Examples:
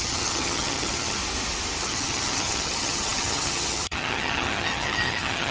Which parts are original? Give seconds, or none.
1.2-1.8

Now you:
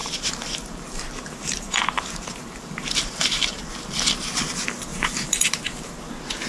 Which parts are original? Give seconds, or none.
3.6-4.9; 5.9-6.5

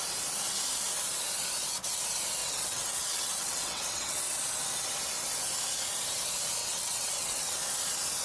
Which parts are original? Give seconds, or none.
0.0-2.4; 4.2-6.6; 7.6-8.2

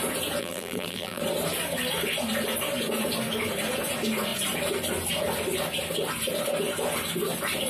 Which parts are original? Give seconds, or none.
0.0-0.4; 1.2-7.7

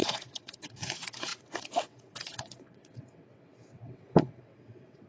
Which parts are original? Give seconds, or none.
none

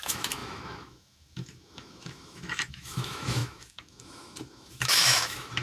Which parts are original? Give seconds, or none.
none

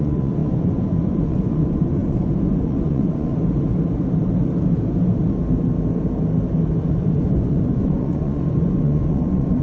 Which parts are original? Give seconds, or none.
3.3-6.9